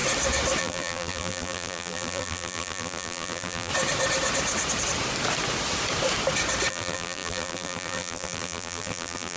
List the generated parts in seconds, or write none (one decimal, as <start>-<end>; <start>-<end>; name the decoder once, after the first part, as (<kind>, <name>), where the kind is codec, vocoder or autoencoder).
0.6-3.7 (vocoder, BigVGAN v2); 6.7-9.4